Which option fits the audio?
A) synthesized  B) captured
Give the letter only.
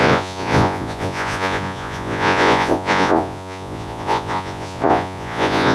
A